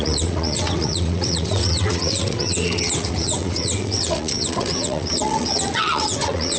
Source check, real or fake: fake